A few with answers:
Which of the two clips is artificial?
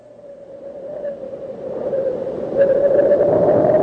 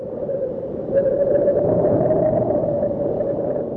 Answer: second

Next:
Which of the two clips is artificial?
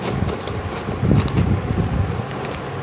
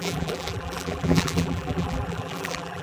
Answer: second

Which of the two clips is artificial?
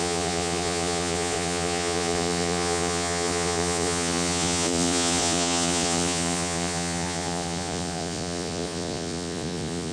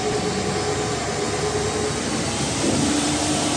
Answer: first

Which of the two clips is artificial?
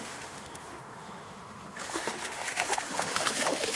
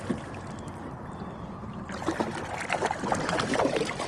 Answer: first